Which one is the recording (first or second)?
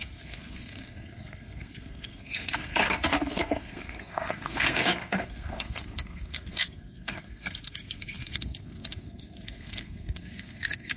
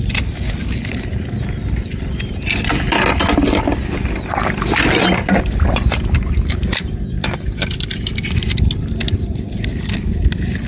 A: second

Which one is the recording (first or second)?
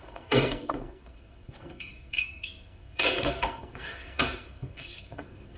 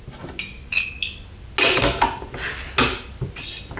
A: second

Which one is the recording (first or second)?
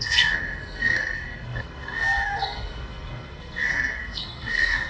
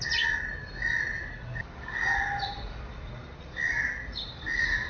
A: second